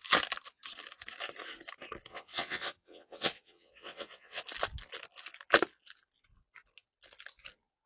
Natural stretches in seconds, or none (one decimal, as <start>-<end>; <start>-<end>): 0.0-2.1; 4.4-7.9